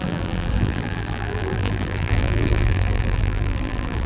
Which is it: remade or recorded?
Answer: remade